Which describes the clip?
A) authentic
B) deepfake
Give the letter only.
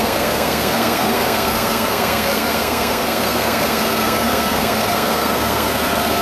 B